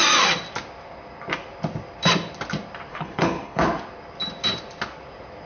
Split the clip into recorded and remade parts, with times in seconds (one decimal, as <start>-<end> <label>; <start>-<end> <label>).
0.0-2.9 recorded; 2.9-3.6 remade; 3.6-5.5 recorded